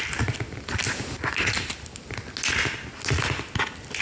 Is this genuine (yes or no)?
yes